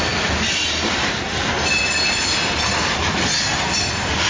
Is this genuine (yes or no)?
yes